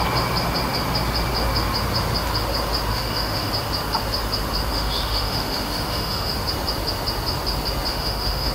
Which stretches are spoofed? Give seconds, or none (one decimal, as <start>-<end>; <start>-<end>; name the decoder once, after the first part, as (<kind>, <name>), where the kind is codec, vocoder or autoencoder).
2.9-3.5 (autoencoder, DAC-VAE); 4.7-6.3; 7.9-8.5